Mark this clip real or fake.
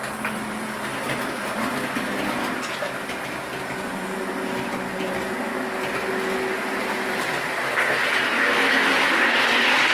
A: real